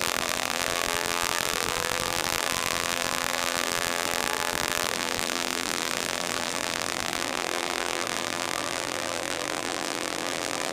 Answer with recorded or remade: remade